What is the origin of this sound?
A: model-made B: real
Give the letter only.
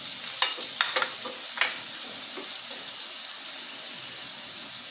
B